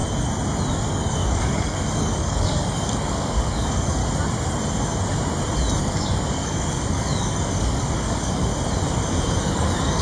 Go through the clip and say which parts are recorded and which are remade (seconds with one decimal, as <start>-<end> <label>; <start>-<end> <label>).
0.0-0.7 recorded; 0.7-4.0 remade; 4.0-5.8 recorded; 5.8-8.5 remade; 8.5-9.4 recorded; 9.4-10.0 remade